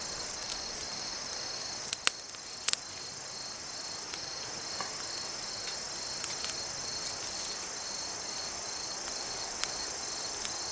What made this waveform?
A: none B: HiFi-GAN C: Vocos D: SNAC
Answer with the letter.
A